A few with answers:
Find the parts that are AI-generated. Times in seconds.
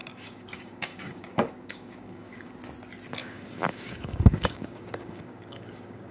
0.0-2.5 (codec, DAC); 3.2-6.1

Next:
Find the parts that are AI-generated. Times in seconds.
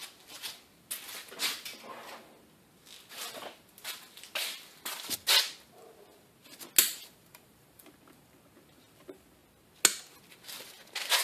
6.8-7.8 (vocoder, BigVGAN v2)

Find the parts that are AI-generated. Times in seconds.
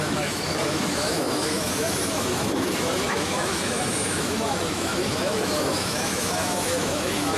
0.0-7.4 (autoencoder, DAC-VAE)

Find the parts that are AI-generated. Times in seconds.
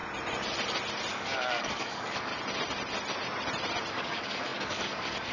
1.1-2.3 (codec, DAC); 3.9-5.3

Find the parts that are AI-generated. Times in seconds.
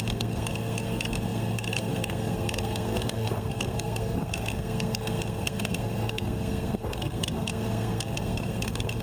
0.0-9.0 (codec, SNAC)